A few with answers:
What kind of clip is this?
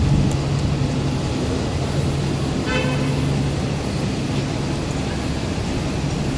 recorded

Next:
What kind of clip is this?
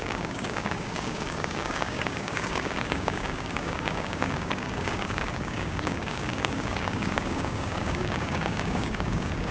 remade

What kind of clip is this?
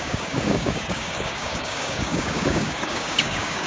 remade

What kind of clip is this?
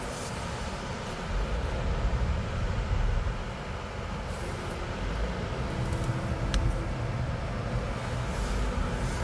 recorded